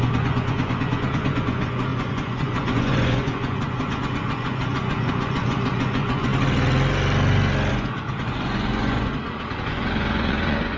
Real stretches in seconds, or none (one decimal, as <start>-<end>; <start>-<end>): 6.3-7.7